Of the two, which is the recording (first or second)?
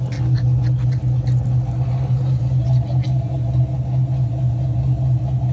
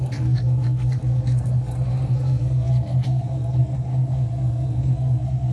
first